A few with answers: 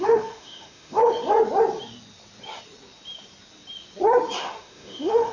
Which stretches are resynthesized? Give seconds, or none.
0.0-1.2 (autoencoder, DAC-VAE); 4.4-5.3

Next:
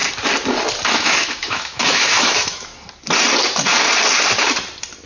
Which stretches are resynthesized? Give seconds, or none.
0.9-2.7 (autoencoder, DAC-VAE)

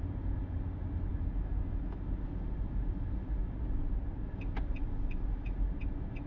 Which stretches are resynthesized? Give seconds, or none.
1.1-2.0 (autoencoder, DAC-VAE)

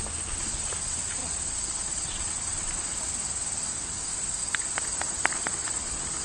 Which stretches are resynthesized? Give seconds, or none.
none

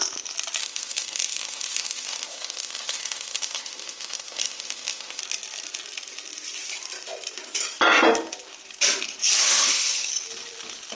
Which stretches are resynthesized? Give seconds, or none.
0.6-5.2 (autoencoder, DAC-VAE); 9.4-10.1